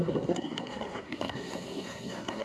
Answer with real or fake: fake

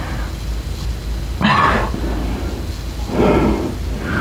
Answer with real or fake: real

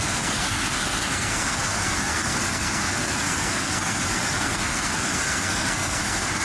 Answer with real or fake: fake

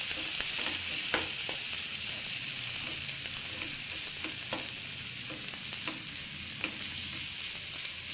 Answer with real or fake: real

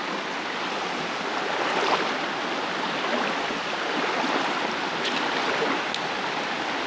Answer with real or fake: real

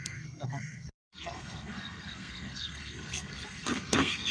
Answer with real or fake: fake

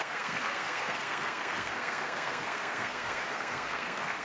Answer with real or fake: fake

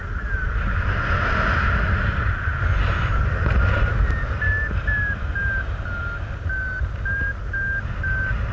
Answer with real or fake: real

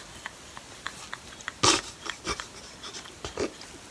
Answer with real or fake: real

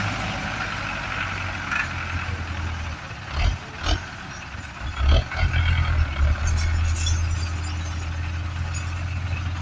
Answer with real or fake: real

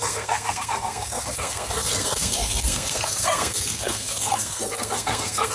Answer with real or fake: fake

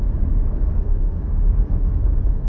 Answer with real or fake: fake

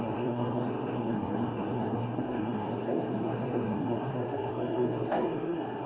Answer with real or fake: fake